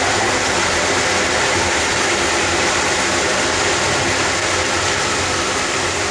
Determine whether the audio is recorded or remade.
recorded